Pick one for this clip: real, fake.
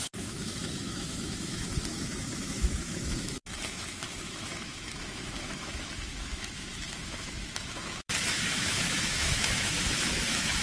fake